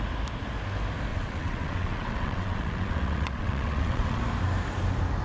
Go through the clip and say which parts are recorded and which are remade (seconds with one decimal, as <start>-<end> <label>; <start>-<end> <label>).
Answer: 0.0-1.1 recorded; 1.1-4.2 remade; 4.2-5.2 recorded